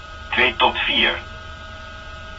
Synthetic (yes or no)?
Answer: no